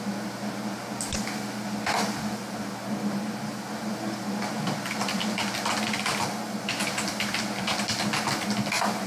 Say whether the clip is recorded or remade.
recorded